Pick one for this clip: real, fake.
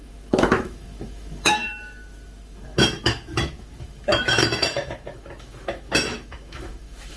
fake